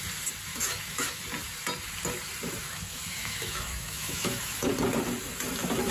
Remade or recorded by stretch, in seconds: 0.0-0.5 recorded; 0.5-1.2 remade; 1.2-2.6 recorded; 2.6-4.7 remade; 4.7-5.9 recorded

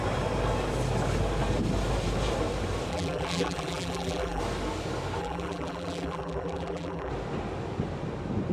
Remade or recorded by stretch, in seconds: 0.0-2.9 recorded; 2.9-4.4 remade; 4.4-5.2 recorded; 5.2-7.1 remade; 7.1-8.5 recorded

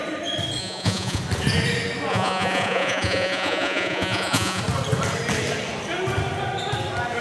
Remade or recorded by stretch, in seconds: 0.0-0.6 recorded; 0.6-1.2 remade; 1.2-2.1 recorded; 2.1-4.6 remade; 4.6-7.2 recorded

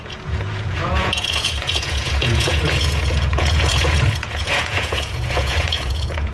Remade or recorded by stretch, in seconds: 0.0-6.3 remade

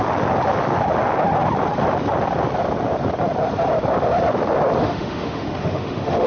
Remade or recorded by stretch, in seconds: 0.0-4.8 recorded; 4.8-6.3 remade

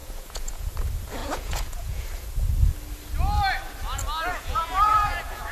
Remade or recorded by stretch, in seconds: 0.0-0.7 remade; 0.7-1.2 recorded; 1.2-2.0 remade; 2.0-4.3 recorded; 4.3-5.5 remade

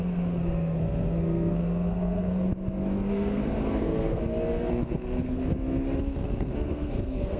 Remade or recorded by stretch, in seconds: 0.0-2.5 remade; 2.5-3.1 recorded; 3.1-4.2 remade; 4.2-4.7 recorded; 4.7-5.4 remade; 5.4-6.0 recorded; 6.0-7.4 remade